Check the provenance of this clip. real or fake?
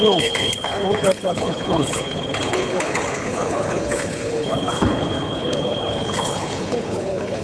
fake